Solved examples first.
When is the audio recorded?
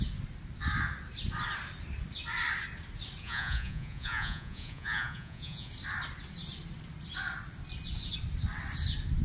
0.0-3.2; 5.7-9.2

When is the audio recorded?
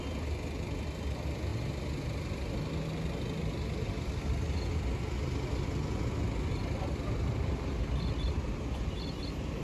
0.0-9.6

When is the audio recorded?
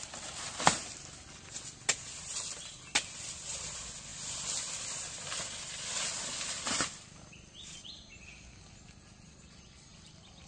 0.0-10.5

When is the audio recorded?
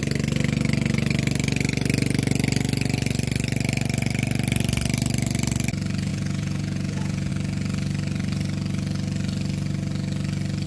0.0-6.1; 7.3-10.7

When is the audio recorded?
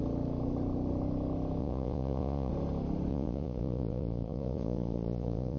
0.0-1.6; 2.5-3.1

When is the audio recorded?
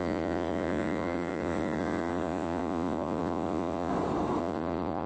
3.9-4.4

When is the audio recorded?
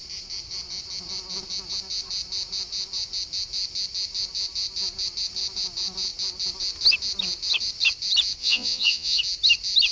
0.0-8.4; 9.2-9.9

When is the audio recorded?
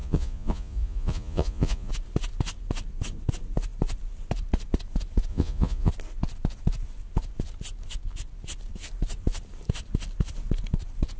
1.9-5.3; 5.9-11.2